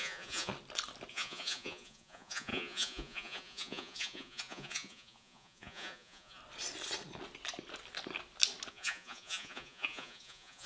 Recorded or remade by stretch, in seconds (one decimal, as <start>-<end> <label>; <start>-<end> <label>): 0.0-0.5 remade; 0.5-1.1 recorded; 1.1-6.4 remade; 6.4-8.7 recorded; 8.7-10.7 remade

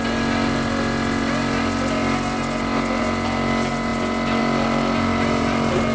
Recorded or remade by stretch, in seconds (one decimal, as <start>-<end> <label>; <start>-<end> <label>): 0.0-5.9 recorded

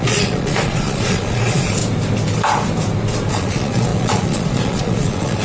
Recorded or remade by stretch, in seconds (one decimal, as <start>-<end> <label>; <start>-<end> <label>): 0.0-1.8 remade; 1.8-3.3 recorded; 3.3-5.4 remade

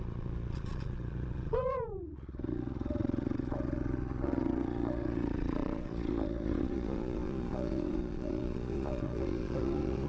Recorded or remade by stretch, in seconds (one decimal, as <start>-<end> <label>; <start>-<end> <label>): 0.0-10.1 remade

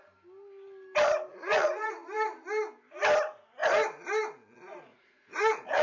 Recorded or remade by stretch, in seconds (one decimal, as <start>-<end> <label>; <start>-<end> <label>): 0.0-1.3 recorded; 1.3-1.9 remade; 1.9-4.9 recorded; 4.9-5.8 remade

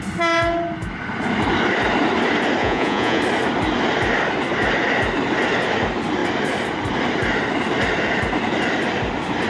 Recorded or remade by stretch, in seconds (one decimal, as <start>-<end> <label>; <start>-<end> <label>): 0.0-2.6 recorded; 2.6-3.2 remade; 3.2-9.5 recorded

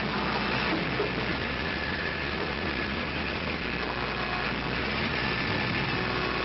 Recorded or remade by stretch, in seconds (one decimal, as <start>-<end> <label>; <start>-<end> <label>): 0.0-1.3 recorded; 1.3-3.6 remade; 3.6-4.8 recorded; 4.8-5.3 remade; 5.3-6.4 recorded

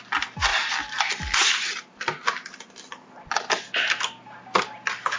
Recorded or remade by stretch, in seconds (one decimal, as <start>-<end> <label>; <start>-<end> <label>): 0.0-5.2 recorded